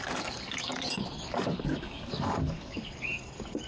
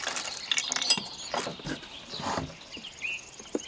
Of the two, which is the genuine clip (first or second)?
second